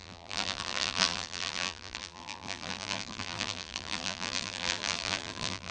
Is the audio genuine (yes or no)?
no